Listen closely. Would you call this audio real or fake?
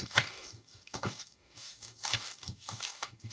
fake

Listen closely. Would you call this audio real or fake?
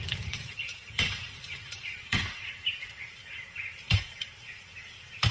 fake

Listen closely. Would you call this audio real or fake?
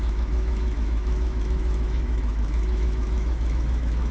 fake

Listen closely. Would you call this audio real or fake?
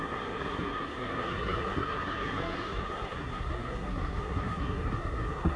fake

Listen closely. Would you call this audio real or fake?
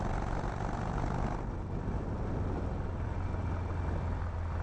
real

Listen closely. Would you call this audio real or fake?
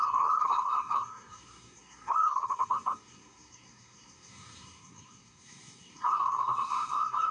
fake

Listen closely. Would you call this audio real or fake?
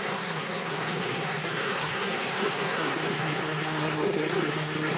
fake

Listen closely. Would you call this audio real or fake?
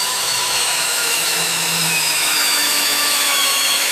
fake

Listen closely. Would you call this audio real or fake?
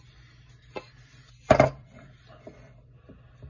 real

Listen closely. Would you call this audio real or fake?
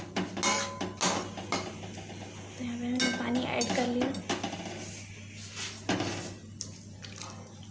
real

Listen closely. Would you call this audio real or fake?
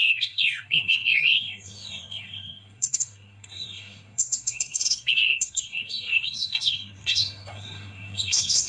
fake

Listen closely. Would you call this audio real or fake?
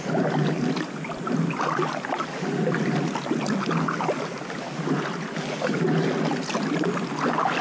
real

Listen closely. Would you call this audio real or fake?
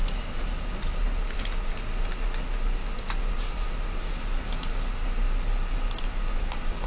real